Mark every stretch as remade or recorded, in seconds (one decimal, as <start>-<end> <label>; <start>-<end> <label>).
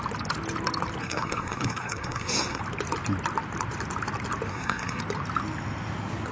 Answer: 0.0-1.0 recorded; 1.0-2.6 remade; 2.6-4.5 recorded; 4.5-5.0 remade; 5.0-6.3 recorded